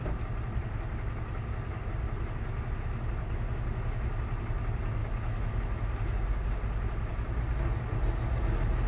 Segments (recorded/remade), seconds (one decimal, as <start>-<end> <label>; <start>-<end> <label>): 0.0-8.9 recorded